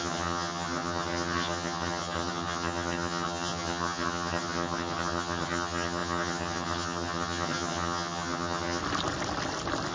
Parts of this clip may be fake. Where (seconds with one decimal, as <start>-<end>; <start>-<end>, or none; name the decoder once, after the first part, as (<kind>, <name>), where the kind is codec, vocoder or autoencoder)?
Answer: 0.0-8.8 (vocoder, HiFi-GAN)